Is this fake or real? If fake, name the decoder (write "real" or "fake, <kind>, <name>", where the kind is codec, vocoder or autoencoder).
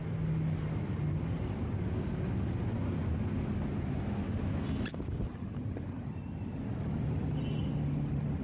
real